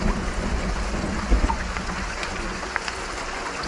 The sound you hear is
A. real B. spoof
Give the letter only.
B